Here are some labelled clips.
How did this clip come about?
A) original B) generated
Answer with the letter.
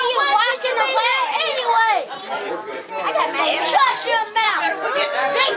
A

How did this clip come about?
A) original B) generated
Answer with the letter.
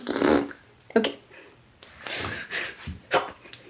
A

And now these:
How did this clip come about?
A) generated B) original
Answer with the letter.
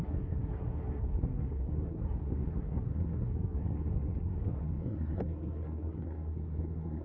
A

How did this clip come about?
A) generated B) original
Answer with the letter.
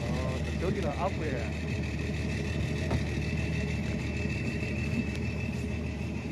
A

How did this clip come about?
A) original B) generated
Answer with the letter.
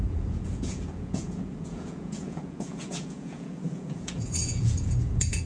B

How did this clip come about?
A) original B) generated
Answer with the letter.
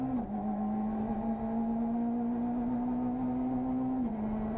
A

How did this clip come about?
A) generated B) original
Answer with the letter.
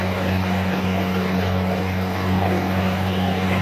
A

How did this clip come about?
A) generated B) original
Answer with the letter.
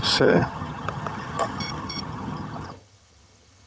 A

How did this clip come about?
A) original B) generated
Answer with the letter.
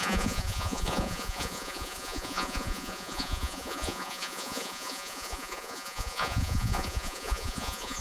B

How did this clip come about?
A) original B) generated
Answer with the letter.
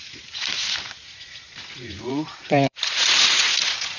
B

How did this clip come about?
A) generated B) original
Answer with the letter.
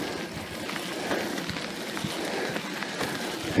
B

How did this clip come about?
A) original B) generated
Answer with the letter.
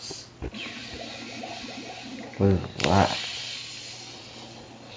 A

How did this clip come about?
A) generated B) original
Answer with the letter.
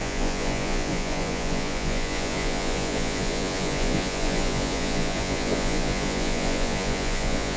A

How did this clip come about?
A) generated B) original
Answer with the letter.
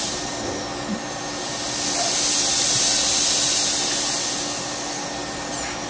B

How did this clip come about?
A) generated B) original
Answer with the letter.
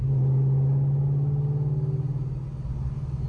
B